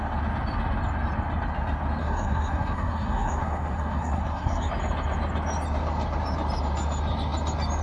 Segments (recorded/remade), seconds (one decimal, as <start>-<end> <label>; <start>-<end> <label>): 0.0-2.0 recorded; 2.0-4.7 remade; 4.7-7.8 recorded